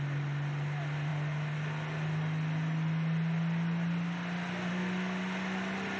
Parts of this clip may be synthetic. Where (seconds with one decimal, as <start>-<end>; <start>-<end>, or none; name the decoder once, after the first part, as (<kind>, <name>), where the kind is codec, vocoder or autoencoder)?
none